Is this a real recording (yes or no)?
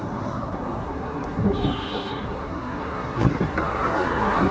no